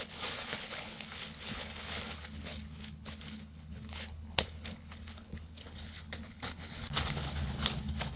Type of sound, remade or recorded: remade